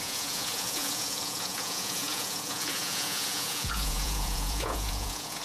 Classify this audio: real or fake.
fake